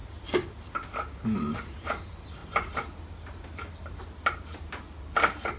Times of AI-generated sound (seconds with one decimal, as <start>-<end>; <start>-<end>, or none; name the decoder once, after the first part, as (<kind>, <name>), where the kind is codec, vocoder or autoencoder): none